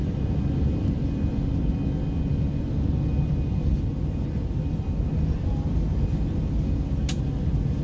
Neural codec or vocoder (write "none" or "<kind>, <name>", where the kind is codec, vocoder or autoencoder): none